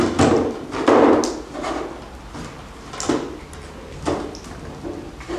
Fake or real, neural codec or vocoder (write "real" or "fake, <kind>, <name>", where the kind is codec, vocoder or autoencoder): real